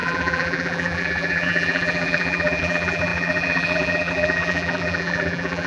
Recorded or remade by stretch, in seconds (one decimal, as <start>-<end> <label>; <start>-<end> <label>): 0.0-5.7 remade